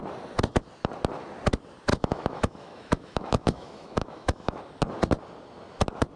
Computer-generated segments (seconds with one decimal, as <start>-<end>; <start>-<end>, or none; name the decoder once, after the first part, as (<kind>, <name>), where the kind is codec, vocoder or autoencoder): 1.9-4.6 (autoencoder, DAC-VAE)